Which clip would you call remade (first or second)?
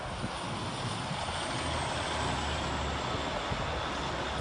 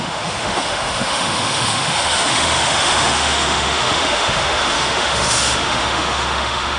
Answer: second